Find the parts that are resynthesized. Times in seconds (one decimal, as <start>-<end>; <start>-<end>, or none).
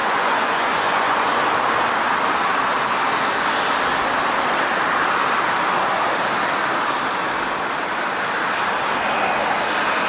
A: 0.0-1.4